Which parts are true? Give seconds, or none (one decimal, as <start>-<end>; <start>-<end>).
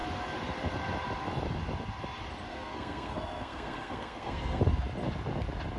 0.0-2.5; 4.6-5.8